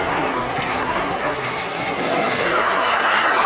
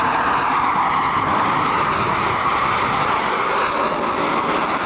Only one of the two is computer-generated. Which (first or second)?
first